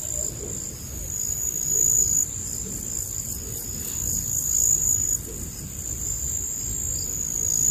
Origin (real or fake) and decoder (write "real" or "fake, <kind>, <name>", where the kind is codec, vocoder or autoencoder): fake, vocoder, BigVGAN v2